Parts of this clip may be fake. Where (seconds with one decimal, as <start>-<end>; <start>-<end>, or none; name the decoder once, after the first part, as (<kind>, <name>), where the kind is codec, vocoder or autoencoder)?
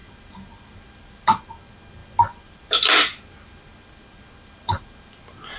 0.0-1.4 (vocoder, BigVGAN v2); 2.0-5.6